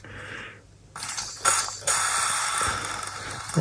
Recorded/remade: recorded